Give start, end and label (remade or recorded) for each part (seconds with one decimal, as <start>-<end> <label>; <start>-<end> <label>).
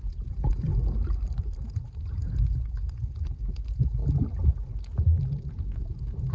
0.0-0.7 remade; 0.7-1.6 recorded; 1.6-4.0 remade; 4.0-5.5 recorded; 5.5-6.3 remade